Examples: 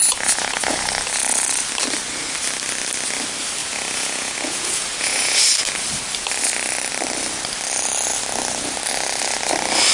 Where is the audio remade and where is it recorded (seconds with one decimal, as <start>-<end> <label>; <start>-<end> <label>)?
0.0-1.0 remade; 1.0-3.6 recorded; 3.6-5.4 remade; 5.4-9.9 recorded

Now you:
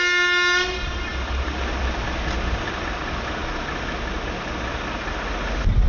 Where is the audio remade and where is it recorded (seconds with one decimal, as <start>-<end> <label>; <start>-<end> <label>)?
0.0-5.9 recorded

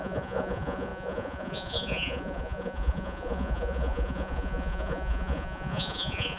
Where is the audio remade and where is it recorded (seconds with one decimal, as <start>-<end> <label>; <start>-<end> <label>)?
0.0-6.4 remade

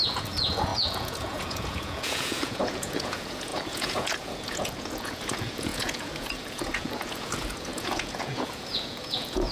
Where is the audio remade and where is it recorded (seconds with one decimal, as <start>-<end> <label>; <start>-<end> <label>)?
0.0-9.5 remade